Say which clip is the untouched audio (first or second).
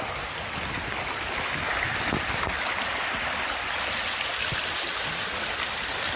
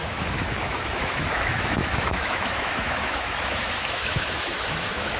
first